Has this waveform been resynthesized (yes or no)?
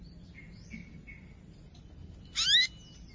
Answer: no